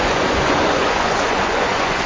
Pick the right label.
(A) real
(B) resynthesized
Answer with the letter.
B